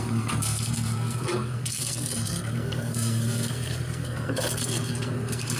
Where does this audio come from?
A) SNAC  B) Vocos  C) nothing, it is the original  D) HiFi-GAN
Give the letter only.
A